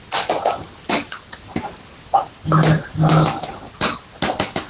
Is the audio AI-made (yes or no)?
no